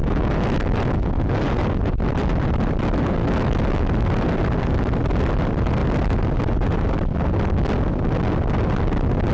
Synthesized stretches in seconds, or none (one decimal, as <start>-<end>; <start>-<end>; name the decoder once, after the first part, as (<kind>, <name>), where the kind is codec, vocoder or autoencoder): 0.0-1.4 (autoencoder, DAC-VAE); 3.2-4.0